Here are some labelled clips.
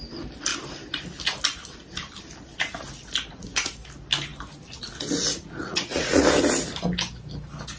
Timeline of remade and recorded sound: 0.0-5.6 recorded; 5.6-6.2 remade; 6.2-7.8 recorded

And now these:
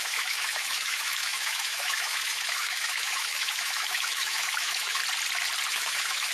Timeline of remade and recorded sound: 0.0-5.0 remade; 5.0-5.7 recorded; 5.7-6.3 remade

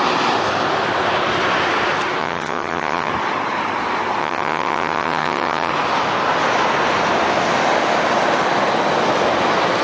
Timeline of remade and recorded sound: 0.0-2.2 recorded; 2.2-3.1 remade; 3.1-4.2 recorded; 4.2-5.7 remade; 5.7-9.8 recorded

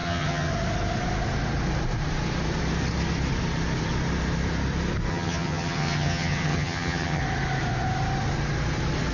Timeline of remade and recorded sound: 0.0-0.5 remade; 0.5-5.1 recorded; 5.1-7.2 remade; 7.2-9.1 recorded

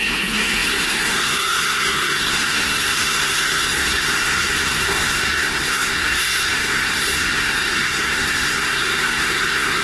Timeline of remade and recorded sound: 0.0-9.8 remade

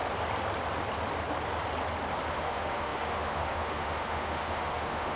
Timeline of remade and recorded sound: 0.0-2.3 recorded; 2.3-5.2 remade

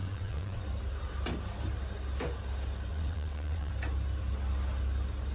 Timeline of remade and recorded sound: 0.0-0.6 remade; 0.6-2.9 recorded; 2.9-3.7 remade; 3.7-5.3 recorded

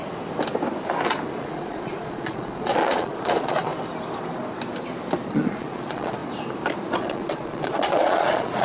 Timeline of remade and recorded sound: 0.0-1.4 recorded; 1.4-3.7 remade; 3.7-5.3 recorded; 5.3-6.2 remade; 6.2-7.0 recorded; 7.0-8.6 remade